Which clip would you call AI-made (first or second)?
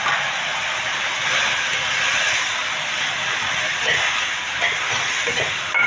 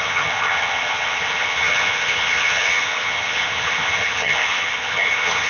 second